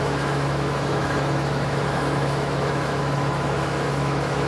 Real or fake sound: fake